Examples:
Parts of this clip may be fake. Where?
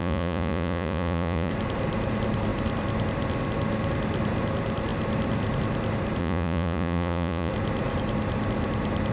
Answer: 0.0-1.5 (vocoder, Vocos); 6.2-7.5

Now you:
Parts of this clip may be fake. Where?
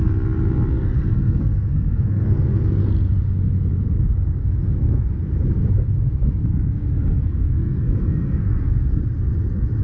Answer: 0.7-2.6 (codec, SNAC); 4.4-5.0; 6.4-9.0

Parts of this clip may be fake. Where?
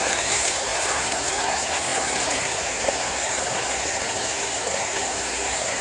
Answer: 0.0-5.8 (codec, SNAC)